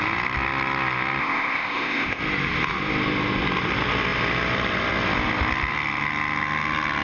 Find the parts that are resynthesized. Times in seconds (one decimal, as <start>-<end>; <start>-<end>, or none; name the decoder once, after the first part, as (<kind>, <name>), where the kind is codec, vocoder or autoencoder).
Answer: 1.2-2.2 (codec, ZipCodec)